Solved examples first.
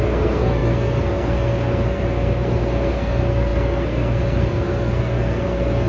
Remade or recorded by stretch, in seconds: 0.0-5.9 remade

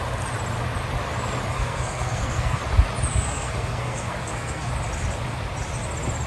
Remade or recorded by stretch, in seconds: 0.0-1.5 recorded; 1.5-2.6 remade; 2.6-3.1 recorded; 3.1-4.7 remade; 4.7-6.3 recorded

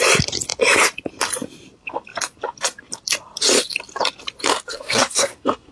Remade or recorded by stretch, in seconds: 0.0-4.7 recorded; 4.7-5.7 remade

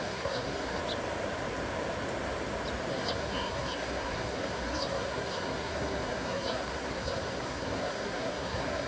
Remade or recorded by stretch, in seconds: 0.0-0.8 remade; 0.8-2.9 recorded; 2.9-8.9 remade

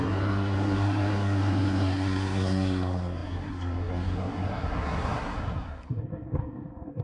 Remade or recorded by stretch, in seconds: 0.0-7.0 remade

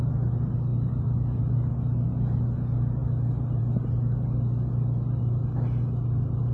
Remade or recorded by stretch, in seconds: 0.0-6.5 recorded